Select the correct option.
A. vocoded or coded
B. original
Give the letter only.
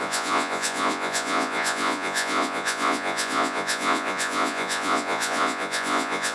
A